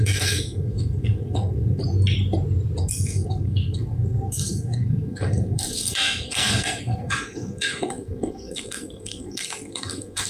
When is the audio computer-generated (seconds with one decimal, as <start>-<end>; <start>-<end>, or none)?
0.0-1.8; 2.8-10.3